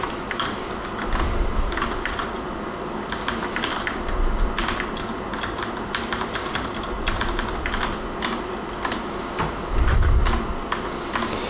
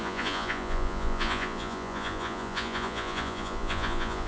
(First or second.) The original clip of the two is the first